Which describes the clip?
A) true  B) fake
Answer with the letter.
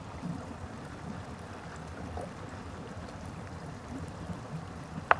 B